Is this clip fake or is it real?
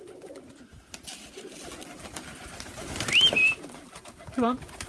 real